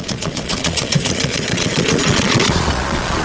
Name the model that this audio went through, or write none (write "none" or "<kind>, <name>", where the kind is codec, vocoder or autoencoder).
vocoder, Vocos